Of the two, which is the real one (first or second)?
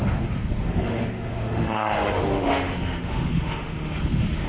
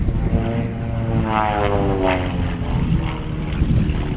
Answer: second